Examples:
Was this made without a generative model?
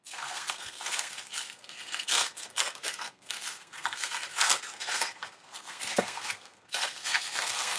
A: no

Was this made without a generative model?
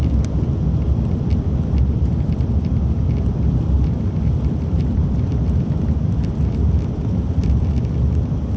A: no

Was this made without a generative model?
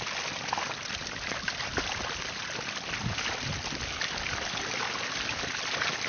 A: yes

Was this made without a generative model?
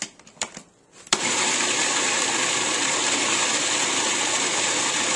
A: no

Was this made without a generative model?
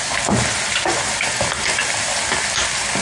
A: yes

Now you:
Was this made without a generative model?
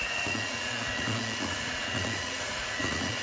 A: no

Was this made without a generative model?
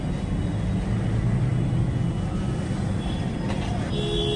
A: yes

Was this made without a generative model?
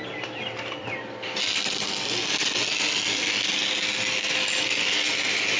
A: yes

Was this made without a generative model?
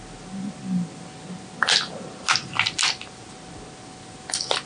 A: yes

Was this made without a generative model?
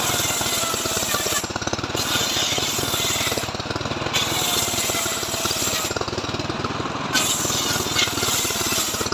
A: yes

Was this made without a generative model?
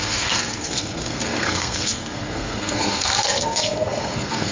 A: no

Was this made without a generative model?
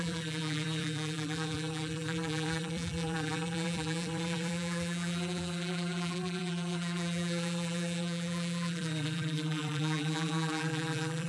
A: no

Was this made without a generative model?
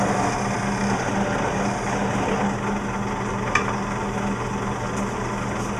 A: yes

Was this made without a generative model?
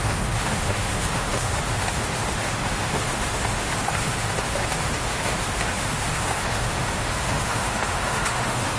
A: no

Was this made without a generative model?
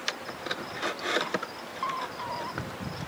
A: yes